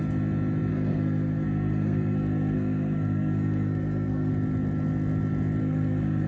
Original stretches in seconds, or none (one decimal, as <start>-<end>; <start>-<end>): 0.0-0.7; 4.3-5.6